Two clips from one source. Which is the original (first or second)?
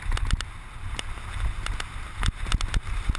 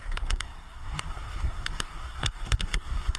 first